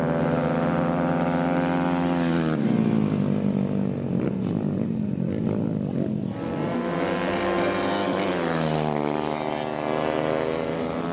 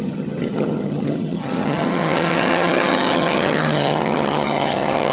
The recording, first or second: first